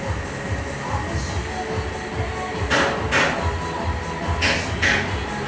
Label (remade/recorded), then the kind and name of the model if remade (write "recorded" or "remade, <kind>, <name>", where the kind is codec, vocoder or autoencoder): recorded